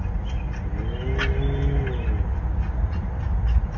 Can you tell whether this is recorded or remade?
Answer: recorded